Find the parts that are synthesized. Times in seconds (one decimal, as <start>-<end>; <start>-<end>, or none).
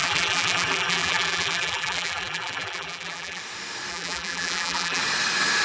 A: 0.0-3.4; 3.9-5.0